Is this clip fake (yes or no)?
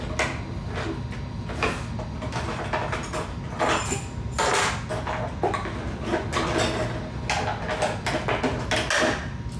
no